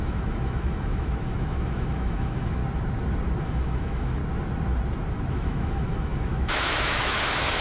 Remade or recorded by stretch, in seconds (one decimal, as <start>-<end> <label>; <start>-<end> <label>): 0.0-2.6 remade; 2.6-3.4 recorded; 3.4-4.2 remade; 4.2-5.3 recorded; 5.3-7.6 remade